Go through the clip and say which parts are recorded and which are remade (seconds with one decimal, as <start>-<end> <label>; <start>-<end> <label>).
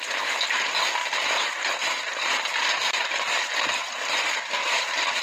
0.0-1.0 recorded; 1.0-3.5 remade; 3.5-4.6 recorded; 4.6-5.2 remade